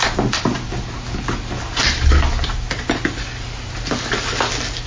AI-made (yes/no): no